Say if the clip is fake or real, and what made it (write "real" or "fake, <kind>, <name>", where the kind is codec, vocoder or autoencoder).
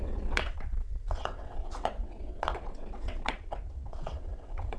fake, vocoder, WaveNeXt